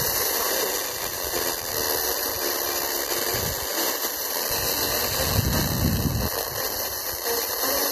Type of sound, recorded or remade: recorded